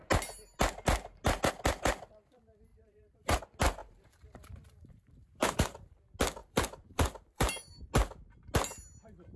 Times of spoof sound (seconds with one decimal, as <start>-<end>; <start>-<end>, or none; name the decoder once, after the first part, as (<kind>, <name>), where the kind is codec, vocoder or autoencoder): 2.7-3.4 (vocoder, BigVGAN v2); 3.8-5.9; 6.4-7.7